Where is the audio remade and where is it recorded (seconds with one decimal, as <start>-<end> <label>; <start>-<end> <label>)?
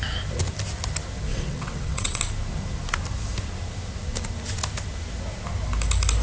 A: 0.0-1.3 recorded; 1.3-2.2 remade; 2.2-6.2 recorded